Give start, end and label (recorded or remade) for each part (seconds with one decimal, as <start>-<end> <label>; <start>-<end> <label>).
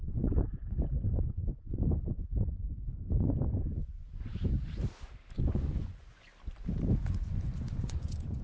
0.0-4.0 remade; 4.0-5.4 recorded; 5.4-6.3 remade; 6.3-7.1 recorded; 7.1-8.4 remade